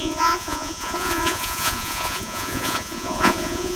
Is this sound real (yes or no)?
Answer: no